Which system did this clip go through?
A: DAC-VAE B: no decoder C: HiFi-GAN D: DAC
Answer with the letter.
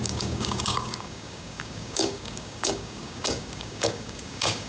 D